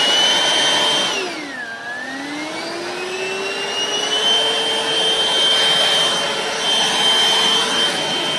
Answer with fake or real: real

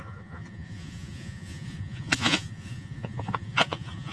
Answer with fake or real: fake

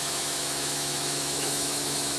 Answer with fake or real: fake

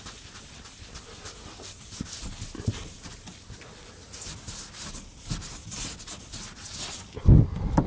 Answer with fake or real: real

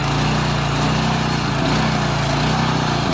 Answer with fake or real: real